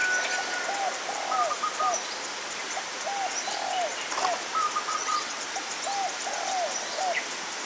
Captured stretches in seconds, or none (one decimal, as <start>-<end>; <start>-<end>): 0.0-4.9; 5.4-7.7